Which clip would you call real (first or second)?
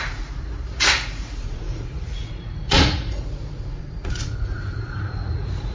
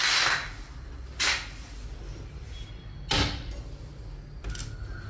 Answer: second